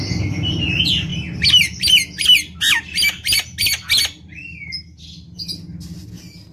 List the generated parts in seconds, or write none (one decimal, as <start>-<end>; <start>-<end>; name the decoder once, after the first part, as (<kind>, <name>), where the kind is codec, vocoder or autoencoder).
none